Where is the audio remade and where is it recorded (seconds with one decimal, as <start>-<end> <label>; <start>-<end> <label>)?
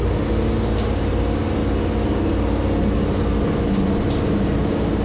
0.0-5.0 recorded